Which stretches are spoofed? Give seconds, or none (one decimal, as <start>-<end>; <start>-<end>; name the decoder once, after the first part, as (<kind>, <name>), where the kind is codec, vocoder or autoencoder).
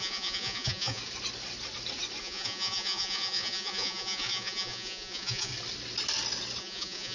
0.0-1.0 (vocoder, Vocos); 2.2-5.5; 6.6-7.1